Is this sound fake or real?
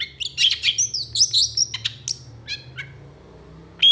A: real